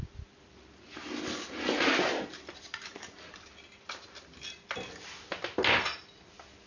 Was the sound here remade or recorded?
recorded